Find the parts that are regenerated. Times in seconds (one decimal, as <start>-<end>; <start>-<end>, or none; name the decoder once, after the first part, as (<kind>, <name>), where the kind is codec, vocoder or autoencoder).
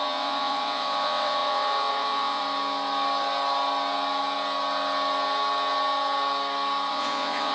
0.0-2.4 (vocoder, WaveNeXt); 6.9-7.5